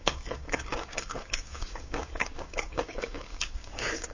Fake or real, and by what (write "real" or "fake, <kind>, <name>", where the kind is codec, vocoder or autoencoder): fake, codec, DAC